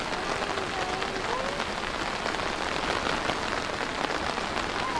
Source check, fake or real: real